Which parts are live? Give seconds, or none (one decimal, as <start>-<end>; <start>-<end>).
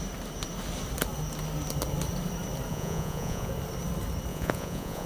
0.0-2.7; 3.5-4.3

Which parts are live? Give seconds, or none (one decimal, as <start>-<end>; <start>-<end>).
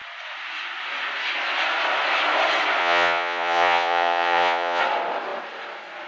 0.0-2.8; 4.8-6.1